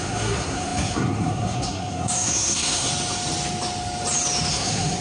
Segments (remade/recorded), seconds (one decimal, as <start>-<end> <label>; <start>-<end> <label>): 0.0-2.9 remade; 2.9-4.5 recorded; 4.5-5.0 remade